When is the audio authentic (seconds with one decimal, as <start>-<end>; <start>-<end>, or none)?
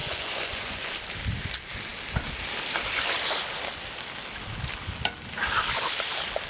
0.9-6.5